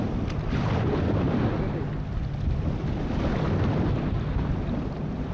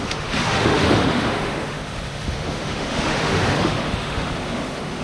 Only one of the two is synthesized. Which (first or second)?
second